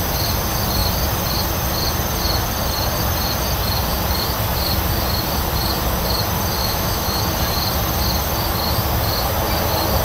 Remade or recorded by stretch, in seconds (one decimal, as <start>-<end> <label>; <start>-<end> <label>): 0.0-6.6 recorded; 6.6-7.2 remade; 7.2-10.0 recorded